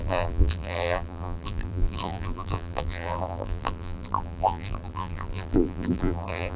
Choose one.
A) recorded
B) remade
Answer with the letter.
B